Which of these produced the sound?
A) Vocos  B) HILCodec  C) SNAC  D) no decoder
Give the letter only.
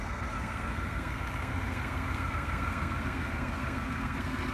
C